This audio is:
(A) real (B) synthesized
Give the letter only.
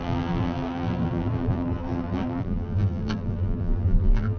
B